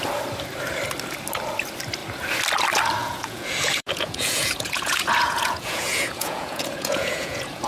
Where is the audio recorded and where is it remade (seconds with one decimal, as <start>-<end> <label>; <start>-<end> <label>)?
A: 0.0-3.0 recorded; 3.0-7.7 remade